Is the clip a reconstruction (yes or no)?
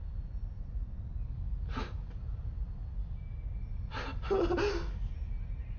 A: no